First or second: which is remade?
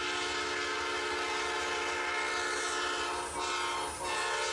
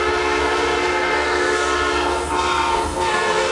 second